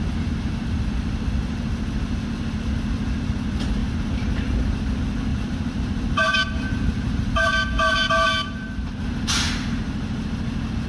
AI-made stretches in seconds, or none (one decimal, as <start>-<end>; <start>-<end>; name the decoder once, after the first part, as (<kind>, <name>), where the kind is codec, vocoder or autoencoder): 3.8-4.6 (vocoder, BigVGAN v2); 5.3-9.5